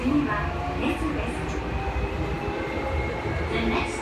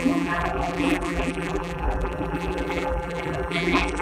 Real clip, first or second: first